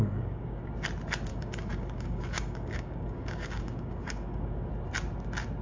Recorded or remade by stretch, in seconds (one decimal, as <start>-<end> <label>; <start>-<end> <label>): 0.0-0.7 remade; 0.7-1.3 recorded; 1.3-4.7 remade; 4.7-5.6 recorded